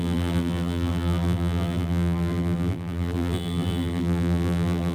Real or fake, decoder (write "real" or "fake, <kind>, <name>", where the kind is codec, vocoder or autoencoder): fake, vocoder, BigVGAN v2